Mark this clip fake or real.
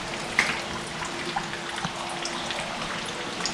real